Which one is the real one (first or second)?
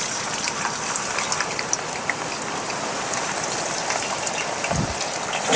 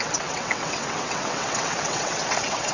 first